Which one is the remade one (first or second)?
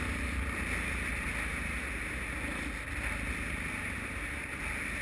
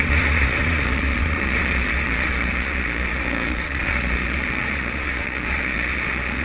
second